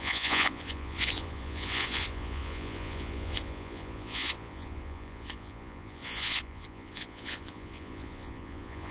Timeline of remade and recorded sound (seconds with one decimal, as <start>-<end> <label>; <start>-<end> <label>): 0.0-8.9 remade